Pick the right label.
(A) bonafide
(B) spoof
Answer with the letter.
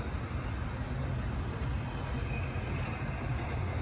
A